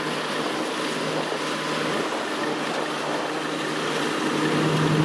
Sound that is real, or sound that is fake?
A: real